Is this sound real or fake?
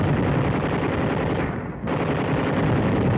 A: real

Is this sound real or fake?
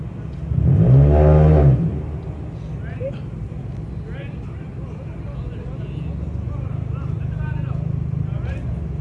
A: real